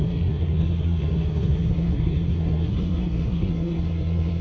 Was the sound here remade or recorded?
remade